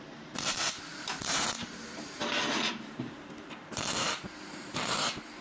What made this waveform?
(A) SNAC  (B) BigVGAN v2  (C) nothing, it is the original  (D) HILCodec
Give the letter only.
B